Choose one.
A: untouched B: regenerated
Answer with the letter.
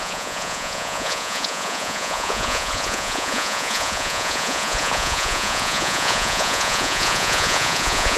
B